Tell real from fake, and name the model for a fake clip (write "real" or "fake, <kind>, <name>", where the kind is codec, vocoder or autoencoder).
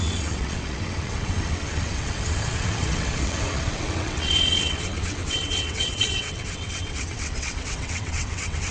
fake, vocoder, WaveNeXt